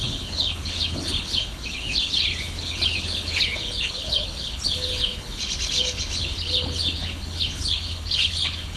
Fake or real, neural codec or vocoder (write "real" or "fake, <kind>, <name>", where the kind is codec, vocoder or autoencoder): fake, codec, HILCodec